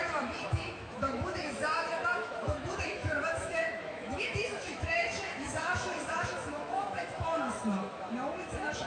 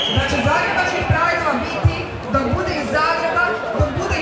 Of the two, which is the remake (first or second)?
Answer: first